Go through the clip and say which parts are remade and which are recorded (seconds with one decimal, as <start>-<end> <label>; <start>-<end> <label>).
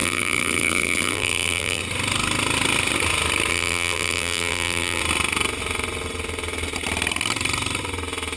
0.0-1.8 remade; 1.8-3.5 recorded; 3.5-5.0 remade; 5.0-8.4 recorded